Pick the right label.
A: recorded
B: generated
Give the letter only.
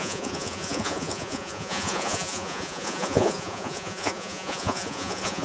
B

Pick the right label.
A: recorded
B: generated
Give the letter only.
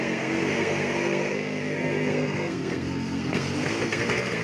B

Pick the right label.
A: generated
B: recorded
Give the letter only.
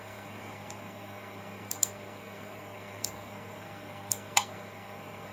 A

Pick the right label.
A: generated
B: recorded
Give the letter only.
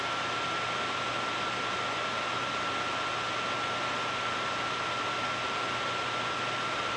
B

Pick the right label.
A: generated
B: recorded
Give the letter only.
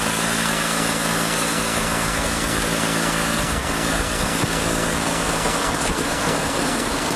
A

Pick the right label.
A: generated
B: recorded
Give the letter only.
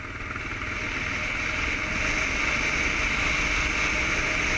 B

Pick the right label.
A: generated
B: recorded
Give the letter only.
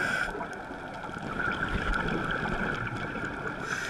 B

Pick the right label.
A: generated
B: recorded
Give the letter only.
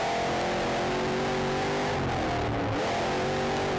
B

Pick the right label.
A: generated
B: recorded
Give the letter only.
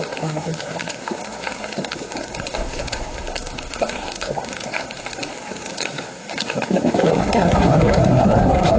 A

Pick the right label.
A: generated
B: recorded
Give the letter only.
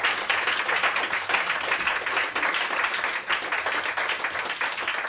B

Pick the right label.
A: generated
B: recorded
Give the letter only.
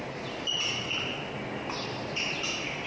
B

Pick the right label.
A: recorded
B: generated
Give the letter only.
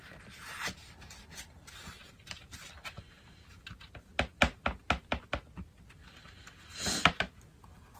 A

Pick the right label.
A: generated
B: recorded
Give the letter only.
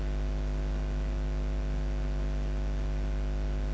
B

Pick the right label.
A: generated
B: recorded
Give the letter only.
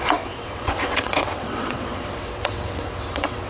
A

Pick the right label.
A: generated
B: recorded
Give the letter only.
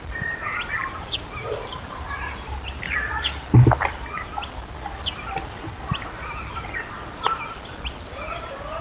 B